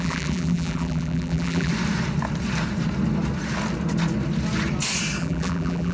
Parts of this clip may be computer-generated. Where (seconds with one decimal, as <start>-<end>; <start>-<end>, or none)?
0.0-1.7; 5.2-5.9